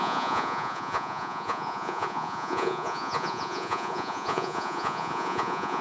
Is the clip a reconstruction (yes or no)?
yes